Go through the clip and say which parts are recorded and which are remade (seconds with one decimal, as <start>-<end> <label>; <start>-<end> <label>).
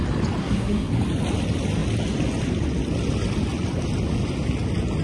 0.0-0.4 recorded; 0.4-0.9 remade; 0.9-5.0 recorded